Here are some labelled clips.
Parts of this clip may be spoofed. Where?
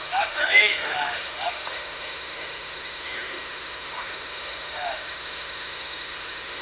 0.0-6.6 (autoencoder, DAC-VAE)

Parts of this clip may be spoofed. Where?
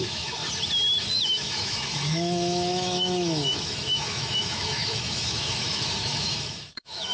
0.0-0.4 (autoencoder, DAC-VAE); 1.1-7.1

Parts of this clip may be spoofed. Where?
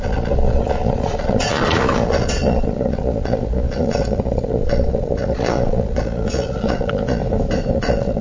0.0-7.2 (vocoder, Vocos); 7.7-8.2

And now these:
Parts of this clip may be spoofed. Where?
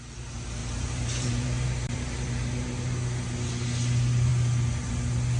0.6-2.3 (vocoder, BigVGAN v2)